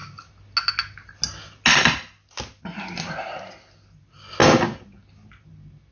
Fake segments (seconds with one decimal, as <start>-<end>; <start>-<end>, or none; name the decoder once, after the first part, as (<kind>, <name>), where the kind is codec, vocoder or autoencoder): none

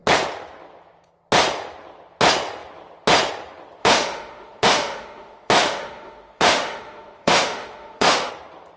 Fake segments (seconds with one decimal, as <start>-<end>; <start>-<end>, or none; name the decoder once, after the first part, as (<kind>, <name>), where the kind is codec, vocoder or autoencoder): 3.8-8.3 (autoencoder, DAC-VAE)